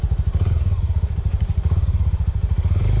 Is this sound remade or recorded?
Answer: remade